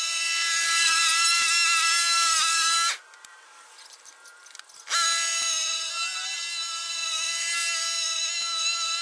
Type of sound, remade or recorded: recorded